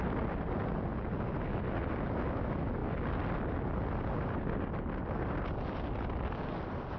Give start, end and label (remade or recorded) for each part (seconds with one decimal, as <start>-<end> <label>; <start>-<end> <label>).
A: 0.0-7.0 recorded